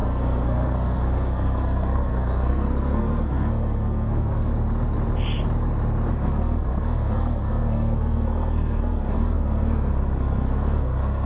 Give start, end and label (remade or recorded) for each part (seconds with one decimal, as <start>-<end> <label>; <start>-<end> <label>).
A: 0.0-4.5 remade; 4.5-6.1 recorded; 6.1-11.2 remade